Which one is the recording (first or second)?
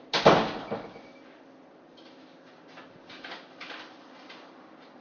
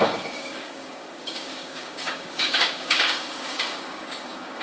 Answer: first